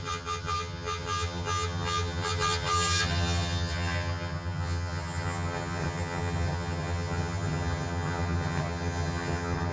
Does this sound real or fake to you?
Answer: fake